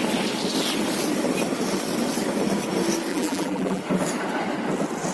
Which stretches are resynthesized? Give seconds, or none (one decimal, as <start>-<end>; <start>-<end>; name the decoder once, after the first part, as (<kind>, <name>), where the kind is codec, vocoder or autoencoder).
3.1-3.8 (vocoder, BigVGAN v2)

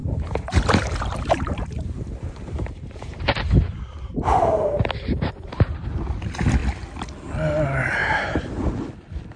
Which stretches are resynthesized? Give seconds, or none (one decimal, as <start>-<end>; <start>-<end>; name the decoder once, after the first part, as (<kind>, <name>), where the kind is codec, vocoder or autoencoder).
0.0-4.8 (vocoder, BigVGAN v2); 8.0-8.6

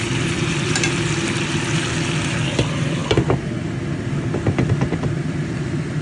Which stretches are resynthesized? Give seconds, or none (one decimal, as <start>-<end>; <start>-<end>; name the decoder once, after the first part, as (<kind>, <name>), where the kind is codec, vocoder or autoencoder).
none

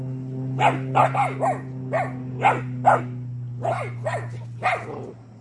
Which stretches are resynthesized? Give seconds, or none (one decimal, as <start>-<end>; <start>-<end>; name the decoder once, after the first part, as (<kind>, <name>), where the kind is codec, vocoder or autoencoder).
none

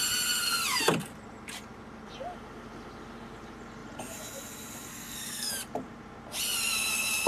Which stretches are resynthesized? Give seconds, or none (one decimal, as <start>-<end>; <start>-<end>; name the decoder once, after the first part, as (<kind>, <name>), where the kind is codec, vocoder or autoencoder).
4.9-5.5 (codec, SNAC)

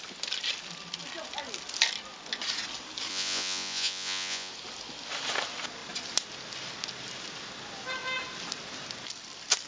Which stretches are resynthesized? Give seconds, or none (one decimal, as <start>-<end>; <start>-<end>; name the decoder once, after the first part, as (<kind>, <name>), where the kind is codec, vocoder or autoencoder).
3.1-4.5 (vocoder, Vocos)

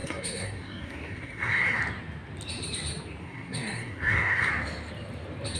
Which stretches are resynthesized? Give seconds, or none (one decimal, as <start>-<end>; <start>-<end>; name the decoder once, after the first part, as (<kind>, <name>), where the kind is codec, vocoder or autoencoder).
0.0-1.8 (codec, SNAC); 3.2-4.5

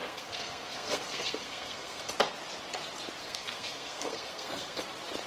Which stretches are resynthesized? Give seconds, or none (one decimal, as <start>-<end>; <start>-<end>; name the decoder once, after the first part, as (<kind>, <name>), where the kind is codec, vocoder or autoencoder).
0.0-2.1 (codec, SNAC); 3.2-4.8